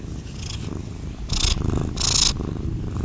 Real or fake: real